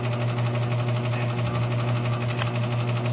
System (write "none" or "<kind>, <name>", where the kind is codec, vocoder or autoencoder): none